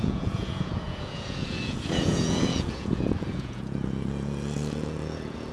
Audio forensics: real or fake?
fake